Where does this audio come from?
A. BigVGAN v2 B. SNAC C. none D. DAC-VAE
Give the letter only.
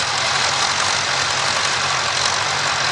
C